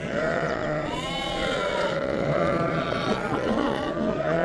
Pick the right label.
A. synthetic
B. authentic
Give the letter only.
A